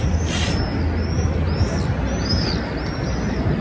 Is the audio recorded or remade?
recorded